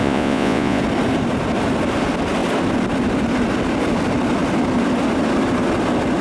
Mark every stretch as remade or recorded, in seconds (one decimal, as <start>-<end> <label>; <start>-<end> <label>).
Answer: 0.0-0.8 remade; 0.8-6.2 recorded